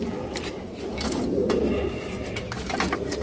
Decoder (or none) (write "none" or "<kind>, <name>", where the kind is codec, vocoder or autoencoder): none